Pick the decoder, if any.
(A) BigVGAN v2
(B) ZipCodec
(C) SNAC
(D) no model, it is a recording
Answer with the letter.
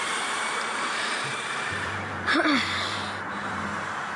A